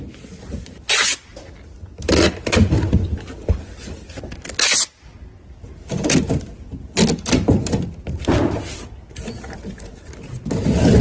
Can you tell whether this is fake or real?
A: real